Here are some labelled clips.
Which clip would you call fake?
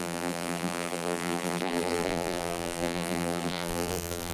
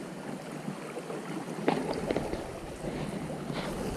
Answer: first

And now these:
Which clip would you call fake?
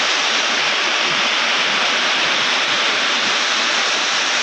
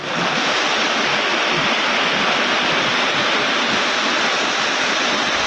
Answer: first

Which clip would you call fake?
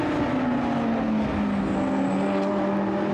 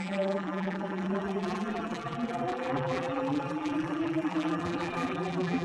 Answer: second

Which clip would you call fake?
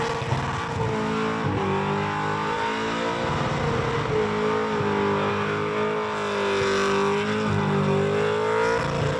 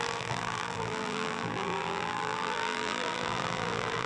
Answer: second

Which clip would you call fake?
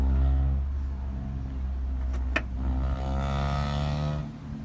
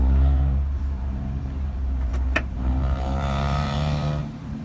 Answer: second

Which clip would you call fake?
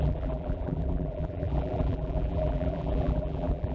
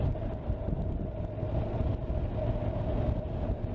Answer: first